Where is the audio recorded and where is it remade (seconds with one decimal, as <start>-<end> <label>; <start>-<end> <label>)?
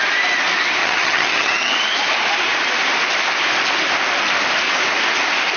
0.0-0.8 recorded; 0.8-1.7 remade; 1.7-5.6 recorded